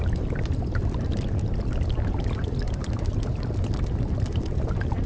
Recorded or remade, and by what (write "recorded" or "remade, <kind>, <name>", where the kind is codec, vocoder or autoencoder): recorded